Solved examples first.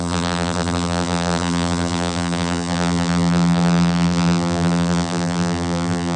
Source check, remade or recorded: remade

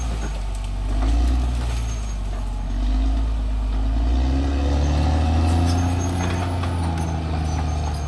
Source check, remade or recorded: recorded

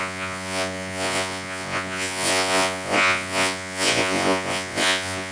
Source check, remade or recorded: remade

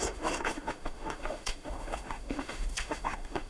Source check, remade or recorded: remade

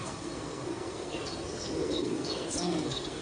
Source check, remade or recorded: remade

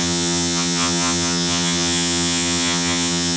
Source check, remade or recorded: remade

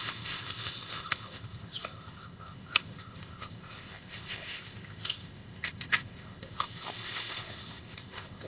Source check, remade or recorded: remade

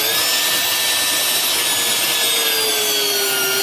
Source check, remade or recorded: recorded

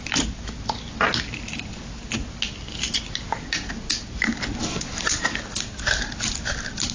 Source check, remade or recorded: recorded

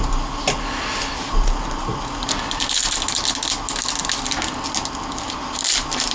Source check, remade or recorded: recorded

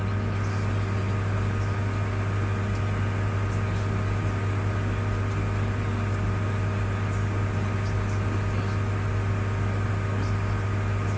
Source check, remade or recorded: recorded